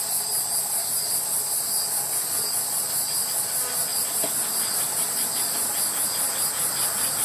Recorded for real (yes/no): yes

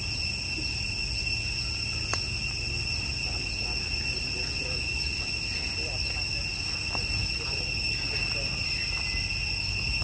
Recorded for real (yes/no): yes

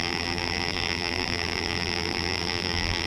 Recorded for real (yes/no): no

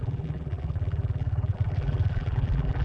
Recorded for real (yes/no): no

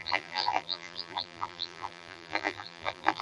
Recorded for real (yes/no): no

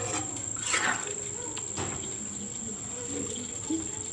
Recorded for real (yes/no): yes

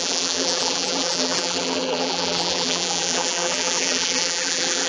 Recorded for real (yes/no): no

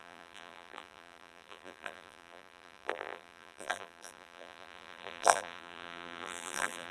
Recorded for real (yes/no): no